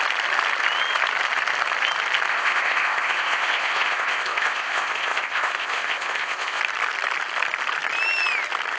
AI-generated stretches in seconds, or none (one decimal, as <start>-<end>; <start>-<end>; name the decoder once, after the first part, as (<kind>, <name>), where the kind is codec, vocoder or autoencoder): 2.3-6.6 (codec, ZipCodec)